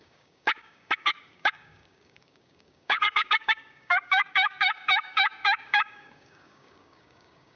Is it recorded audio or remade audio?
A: remade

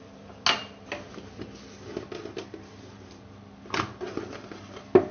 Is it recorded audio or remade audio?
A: recorded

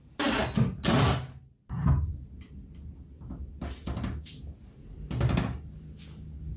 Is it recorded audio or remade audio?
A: recorded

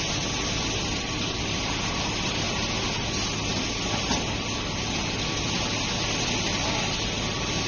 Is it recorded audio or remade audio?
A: recorded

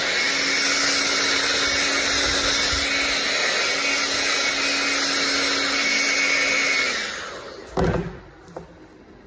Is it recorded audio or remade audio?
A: recorded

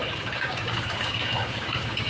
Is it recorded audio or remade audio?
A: remade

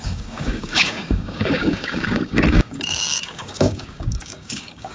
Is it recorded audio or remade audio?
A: remade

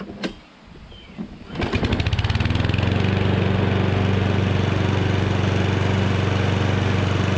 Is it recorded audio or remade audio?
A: recorded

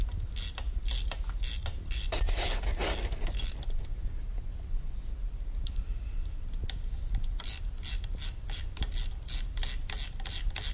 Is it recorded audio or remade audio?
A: recorded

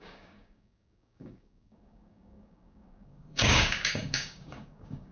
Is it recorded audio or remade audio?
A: remade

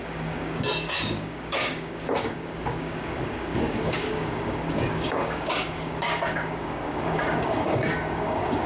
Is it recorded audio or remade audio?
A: remade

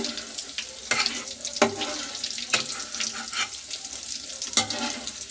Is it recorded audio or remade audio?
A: recorded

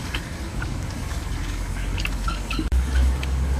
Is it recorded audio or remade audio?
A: remade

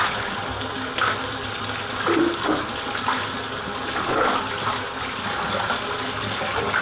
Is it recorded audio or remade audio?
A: recorded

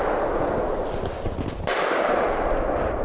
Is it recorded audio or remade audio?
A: recorded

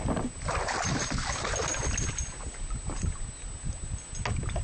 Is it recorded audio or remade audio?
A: recorded